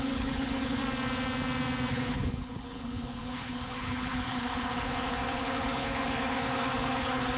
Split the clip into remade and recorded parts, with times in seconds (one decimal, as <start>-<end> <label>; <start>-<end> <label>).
0.0-0.8 remade; 0.8-1.9 recorded; 1.9-7.4 remade